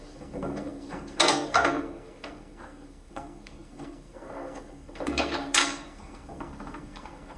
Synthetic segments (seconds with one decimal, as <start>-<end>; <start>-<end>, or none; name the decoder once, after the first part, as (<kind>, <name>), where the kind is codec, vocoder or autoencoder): 0.0-7.4 (codec, SNAC)